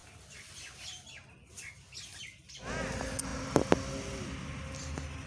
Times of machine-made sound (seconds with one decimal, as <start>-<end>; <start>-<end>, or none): none